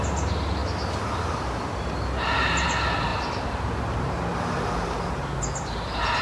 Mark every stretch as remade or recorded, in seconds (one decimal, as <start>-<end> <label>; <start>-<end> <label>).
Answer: 0.0-6.2 recorded

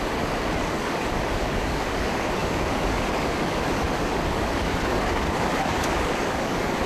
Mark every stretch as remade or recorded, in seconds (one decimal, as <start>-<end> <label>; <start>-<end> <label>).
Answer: 0.0-6.9 remade

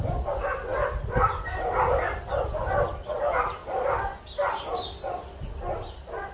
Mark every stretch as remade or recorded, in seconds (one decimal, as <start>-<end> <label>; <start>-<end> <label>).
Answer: 0.0-6.3 recorded